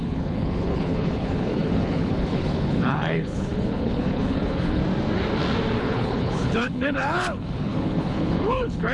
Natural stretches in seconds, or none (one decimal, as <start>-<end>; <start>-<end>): 4.8-5.8